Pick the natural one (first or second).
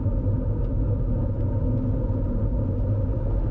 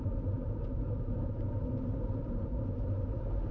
first